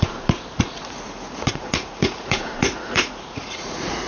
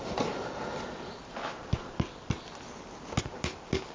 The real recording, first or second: second